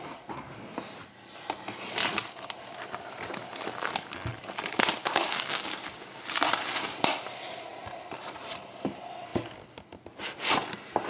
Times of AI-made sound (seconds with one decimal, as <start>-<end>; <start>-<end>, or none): 5.0-6.2